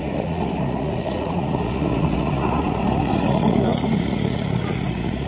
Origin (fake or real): fake